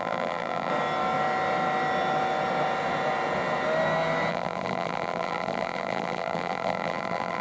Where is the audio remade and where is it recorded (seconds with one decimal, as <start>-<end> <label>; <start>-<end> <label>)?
0.0-0.7 remade; 0.7-4.3 recorded; 4.3-7.4 remade